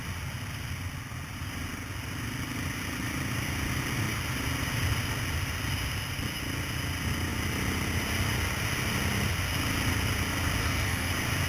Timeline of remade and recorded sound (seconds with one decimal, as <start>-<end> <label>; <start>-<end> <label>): 0.0-10.6 recorded; 10.6-11.1 remade; 11.1-11.5 recorded